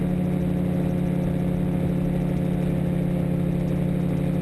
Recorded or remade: recorded